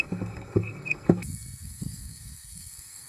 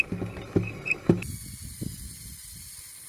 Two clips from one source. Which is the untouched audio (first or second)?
second